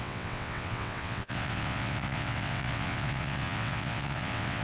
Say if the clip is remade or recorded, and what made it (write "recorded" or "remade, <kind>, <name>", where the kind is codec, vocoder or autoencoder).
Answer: remade, vocoder, WaveNeXt